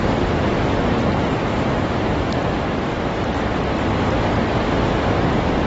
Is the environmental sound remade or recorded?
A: recorded